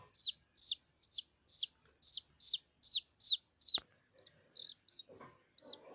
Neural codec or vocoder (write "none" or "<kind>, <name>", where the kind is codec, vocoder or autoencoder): none